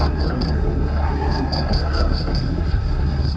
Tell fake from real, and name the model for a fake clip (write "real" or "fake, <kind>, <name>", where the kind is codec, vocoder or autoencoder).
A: fake, codec, SNAC